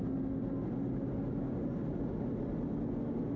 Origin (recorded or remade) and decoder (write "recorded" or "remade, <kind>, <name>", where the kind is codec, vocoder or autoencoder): recorded